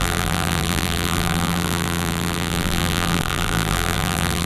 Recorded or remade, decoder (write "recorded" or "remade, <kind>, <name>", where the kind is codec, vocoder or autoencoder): remade, vocoder, BigVGAN v2